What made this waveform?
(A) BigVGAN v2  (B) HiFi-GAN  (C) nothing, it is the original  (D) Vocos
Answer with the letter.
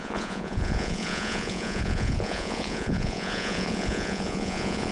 D